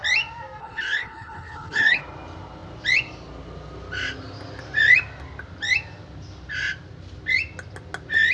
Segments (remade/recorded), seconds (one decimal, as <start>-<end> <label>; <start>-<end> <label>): 0.0-0.6 recorded; 0.6-2.0 remade; 2.0-8.3 recorded